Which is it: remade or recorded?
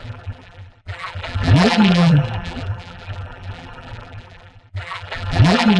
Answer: remade